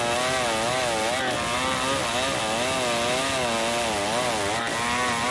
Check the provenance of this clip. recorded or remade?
recorded